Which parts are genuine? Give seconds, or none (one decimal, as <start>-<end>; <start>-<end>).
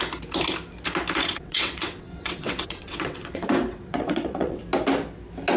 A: 0.0-1.2; 4.6-5.6